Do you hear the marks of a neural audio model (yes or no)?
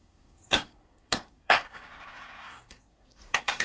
yes